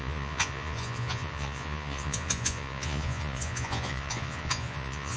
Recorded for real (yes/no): no